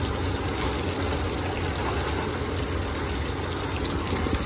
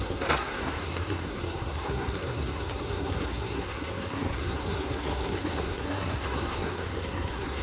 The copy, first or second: second